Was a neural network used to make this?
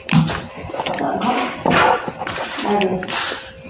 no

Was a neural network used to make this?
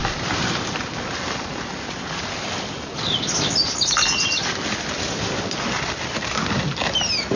no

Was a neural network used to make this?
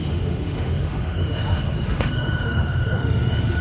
yes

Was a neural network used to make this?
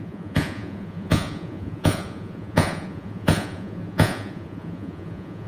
yes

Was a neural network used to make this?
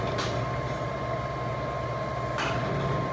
no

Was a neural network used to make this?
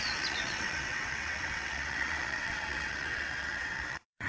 yes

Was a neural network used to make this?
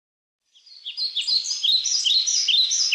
no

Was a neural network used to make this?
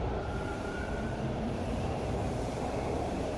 yes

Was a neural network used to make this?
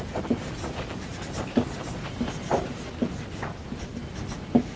no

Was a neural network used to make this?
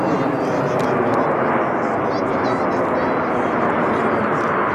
no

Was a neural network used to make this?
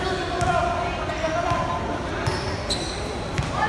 no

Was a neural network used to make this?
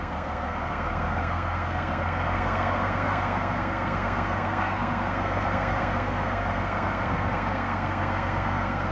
yes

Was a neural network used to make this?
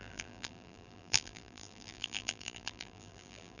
yes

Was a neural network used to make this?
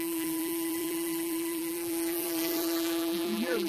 yes